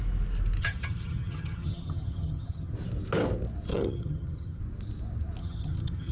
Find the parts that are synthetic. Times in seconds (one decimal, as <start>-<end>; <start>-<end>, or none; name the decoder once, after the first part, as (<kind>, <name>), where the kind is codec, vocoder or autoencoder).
0.6-2.7 (vocoder, HiFi-GAN); 3.7-4.6; 5.4-6.1

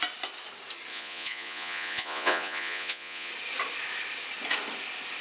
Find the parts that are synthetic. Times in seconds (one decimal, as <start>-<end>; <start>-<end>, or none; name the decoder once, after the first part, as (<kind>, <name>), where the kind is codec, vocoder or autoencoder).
0.9-3.3 (vocoder, Vocos)

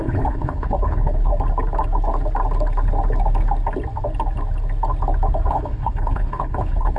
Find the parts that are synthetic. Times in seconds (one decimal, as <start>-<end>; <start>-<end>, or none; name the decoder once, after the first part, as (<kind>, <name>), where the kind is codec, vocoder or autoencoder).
0.0-1.3 (codec, HILCodec); 5.5-7.0